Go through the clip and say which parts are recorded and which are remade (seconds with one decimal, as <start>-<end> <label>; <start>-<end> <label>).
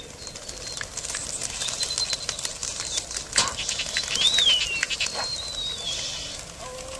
0.0-7.0 recorded